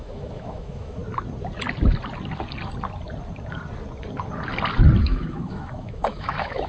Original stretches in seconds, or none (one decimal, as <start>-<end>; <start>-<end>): 1.0-5.0